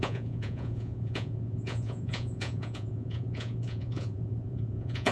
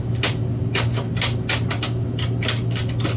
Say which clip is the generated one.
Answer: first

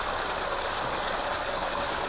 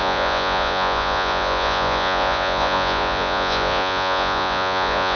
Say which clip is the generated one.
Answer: second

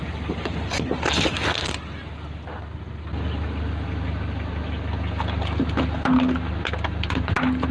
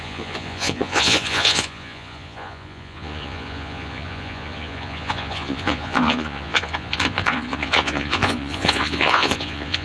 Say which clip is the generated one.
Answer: second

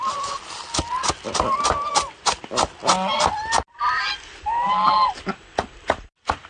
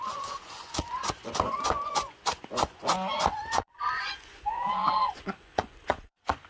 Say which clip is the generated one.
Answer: second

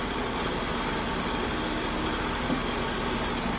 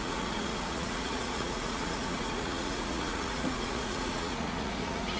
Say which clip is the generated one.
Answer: second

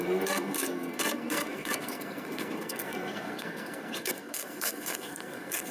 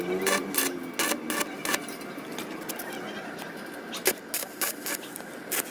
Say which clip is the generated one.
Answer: first